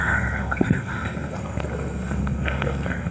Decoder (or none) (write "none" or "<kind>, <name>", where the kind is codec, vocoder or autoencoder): codec, SNAC